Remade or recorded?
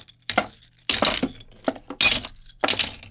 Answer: recorded